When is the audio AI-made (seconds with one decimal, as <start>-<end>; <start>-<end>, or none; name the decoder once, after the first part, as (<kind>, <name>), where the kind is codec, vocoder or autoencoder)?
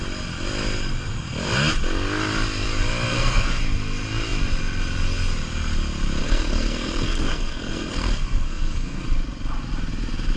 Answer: 3.1-3.6 (codec, SNAC); 6.2-9.0